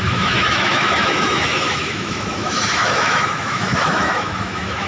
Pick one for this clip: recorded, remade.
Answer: remade